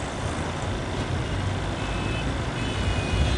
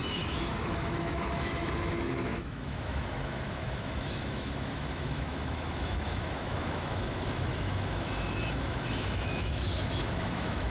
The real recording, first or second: first